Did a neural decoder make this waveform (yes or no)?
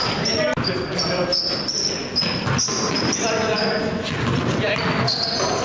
no